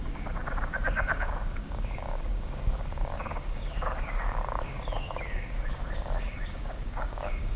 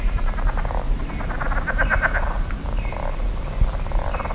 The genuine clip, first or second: second